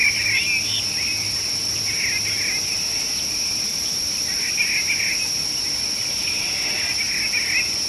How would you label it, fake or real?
real